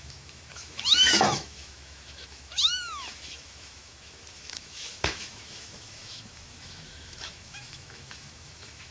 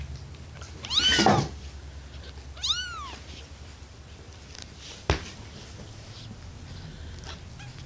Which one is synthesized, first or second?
first